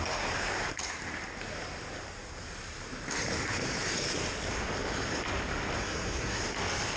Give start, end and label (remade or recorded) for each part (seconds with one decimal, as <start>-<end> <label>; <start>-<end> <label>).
0.0-5.8 recorded; 5.8-6.4 remade; 6.4-7.0 recorded